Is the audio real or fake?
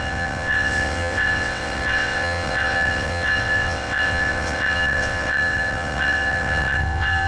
fake